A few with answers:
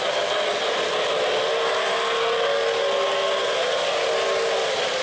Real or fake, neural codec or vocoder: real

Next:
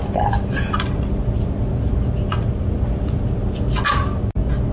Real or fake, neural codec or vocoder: real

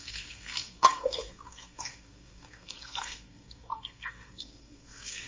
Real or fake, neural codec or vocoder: fake, codec, SNAC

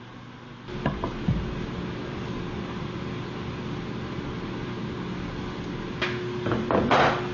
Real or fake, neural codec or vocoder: real